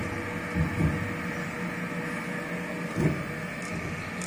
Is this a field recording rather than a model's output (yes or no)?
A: yes